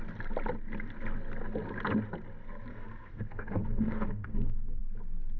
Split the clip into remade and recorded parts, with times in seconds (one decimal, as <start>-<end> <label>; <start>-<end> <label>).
0.0-2.7 recorded; 2.7-4.8 remade; 4.8-5.4 recorded